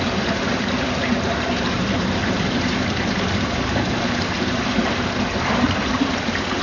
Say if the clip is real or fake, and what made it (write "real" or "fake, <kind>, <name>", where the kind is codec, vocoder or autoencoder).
fake, vocoder, BigVGAN v2